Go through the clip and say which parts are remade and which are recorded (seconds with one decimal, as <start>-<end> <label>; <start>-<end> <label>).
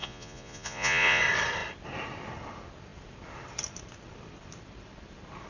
0.0-1.2 remade; 1.2-5.5 recorded